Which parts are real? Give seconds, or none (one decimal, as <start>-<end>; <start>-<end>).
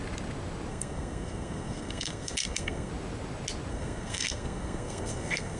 0.0-0.7; 2.9-3.7